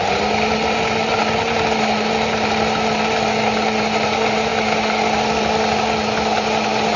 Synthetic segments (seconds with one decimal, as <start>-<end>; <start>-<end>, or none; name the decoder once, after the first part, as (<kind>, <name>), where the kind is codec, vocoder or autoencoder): none